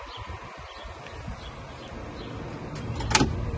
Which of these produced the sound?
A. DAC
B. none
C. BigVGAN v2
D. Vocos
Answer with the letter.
B